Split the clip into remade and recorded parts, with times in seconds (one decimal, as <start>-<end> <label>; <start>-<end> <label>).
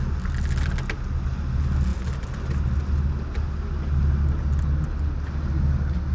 0.0-6.1 recorded